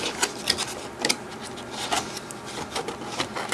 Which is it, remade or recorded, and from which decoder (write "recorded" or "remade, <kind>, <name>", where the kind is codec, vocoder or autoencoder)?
recorded